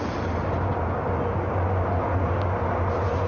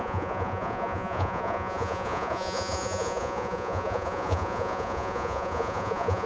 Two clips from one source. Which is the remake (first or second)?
second